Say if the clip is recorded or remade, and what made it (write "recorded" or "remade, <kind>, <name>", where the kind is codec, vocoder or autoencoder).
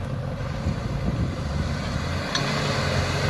recorded